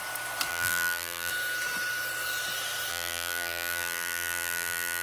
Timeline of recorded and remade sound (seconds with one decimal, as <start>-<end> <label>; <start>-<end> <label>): 0.0-0.5 recorded; 0.5-1.3 remade; 1.3-2.9 recorded; 2.9-5.0 remade